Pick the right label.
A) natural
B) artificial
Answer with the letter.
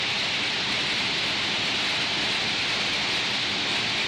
A